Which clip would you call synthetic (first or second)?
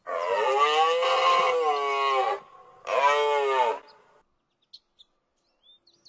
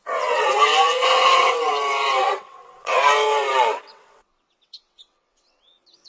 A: second